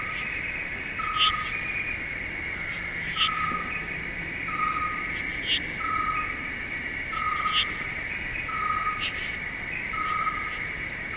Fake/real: real